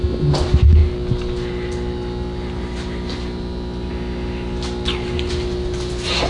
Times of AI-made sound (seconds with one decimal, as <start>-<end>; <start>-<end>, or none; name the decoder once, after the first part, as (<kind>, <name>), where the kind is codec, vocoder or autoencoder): none